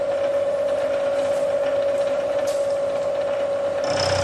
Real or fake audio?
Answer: real